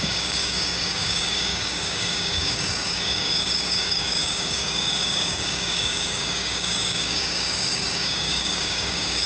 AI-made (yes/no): yes